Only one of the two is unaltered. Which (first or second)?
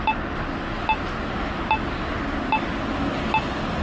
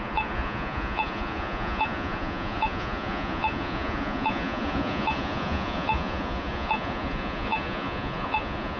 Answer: first